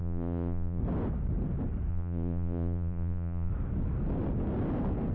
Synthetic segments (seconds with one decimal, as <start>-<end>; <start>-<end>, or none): 0.0-0.8; 1.9-3.5